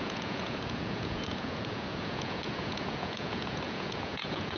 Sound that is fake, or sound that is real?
fake